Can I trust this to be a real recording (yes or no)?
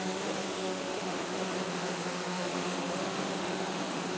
no